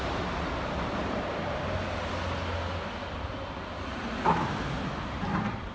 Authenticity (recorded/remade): recorded